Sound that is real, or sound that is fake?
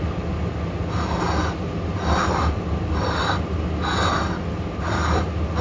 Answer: real